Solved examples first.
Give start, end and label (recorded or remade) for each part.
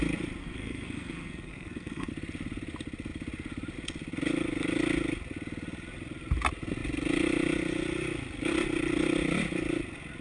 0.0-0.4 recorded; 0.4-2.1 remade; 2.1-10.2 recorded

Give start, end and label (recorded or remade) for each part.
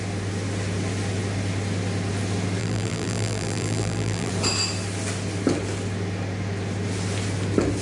0.0-2.6 recorded; 2.6-4.3 remade; 4.3-7.8 recorded